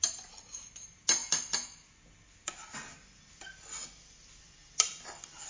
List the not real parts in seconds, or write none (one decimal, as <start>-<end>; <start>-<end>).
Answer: none